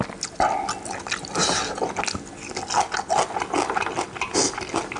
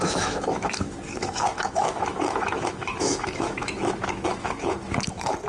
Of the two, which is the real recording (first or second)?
first